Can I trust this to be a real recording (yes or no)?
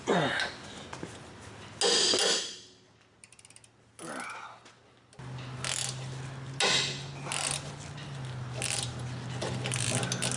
yes